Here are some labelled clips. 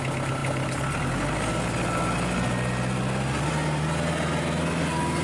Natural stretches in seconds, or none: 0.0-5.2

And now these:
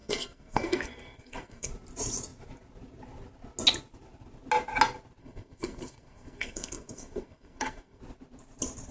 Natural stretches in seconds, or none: 1.7-5.2; 8.0-8.9

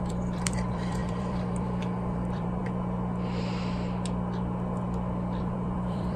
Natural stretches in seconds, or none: 2.6-5.4

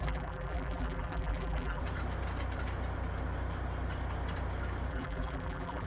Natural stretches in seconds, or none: 1.8-4.9